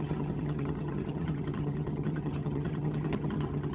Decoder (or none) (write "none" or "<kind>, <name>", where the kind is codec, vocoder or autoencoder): vocoder, HiFi-GAN